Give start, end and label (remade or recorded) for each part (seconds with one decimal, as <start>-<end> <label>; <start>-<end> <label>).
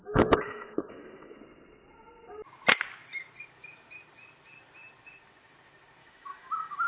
0.0-1.4 remade; 1.4-6.0 recorded; 6.0-6.9 remade